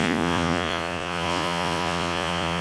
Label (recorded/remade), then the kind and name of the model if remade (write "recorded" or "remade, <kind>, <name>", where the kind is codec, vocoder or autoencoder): remade, vocoder, Vocos